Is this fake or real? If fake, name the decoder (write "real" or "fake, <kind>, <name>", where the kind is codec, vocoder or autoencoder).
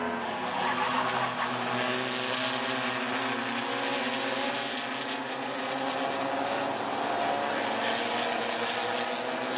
real